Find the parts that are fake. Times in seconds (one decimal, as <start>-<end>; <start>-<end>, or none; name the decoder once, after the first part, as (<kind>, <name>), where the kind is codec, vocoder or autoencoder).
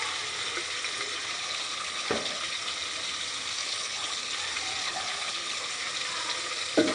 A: 1.4-2.4 (codec, HILCodec); 3.6-4.3; 4.8-5.7